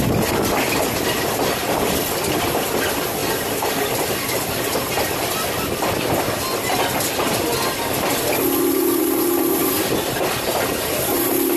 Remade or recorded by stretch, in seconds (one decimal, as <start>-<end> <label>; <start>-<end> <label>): 0.0-3.2 recorded; 3.2-4.6 remade; 4.6-11.6 recorded